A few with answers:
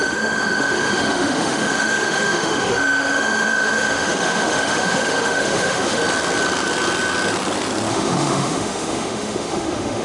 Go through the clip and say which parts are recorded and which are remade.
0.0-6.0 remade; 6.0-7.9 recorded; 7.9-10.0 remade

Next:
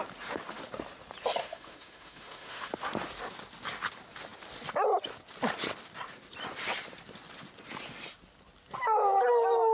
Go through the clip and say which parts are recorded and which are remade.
0.0-1.4 recorded; 1.4-2.7 remade; 2.7-9.7 recorded

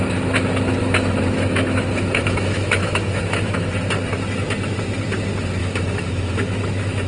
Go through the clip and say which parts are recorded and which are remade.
0.0-0.8 recorded; 0.8-3.7 remade; 3.7-5.6 recorded; 5.6-7.1 remade